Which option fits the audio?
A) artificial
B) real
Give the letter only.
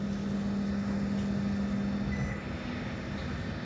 B